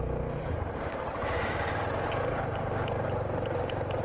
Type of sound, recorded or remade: remade